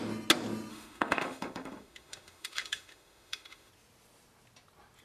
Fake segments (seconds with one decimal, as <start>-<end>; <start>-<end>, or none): 0.7-3.7